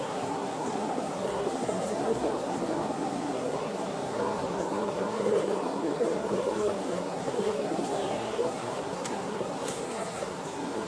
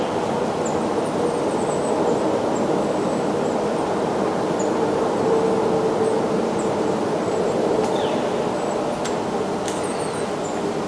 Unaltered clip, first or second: second